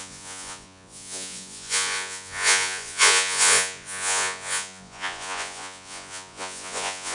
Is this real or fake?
fake